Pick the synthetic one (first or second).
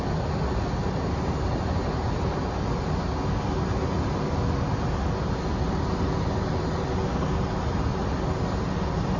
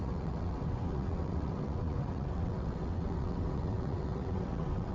second